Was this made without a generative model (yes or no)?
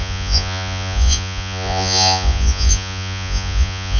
no